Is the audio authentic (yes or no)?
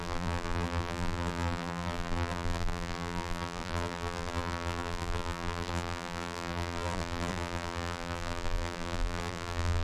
no